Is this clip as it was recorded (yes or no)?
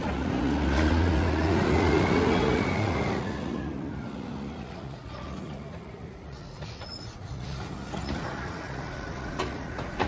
no